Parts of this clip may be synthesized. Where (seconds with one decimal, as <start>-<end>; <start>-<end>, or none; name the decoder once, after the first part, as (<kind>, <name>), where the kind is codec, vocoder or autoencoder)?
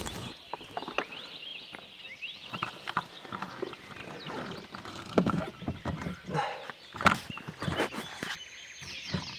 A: 4.9-5.4 (codec, SNAC)